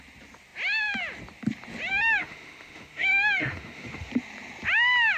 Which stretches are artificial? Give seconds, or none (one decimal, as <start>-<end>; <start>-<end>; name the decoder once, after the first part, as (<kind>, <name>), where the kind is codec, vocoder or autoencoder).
1.9-4.1 (autoencoder, DAC-VAE)